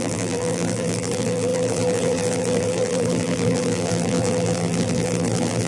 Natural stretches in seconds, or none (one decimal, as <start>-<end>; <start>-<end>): none